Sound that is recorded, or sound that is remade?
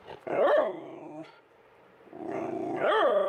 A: remade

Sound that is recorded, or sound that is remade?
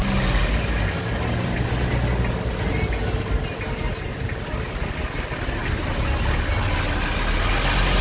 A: recorded